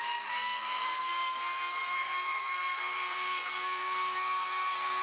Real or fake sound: fake